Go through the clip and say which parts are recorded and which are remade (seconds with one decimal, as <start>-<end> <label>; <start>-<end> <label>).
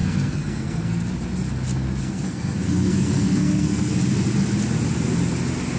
0.0-1.1 remade; 1.1-2.0 recorded; 2.0-3.9 remade; 3.9-5.8 recorded